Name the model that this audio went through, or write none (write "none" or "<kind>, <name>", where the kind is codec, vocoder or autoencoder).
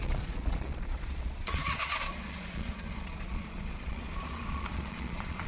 vocoder, Vocos